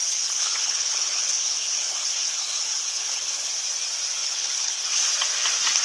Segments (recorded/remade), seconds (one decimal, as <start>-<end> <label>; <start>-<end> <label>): 0.0-3.5 remade; 3.5-4.2 recorded; 4.2-4.8 remade; 4.8-5.8 recorded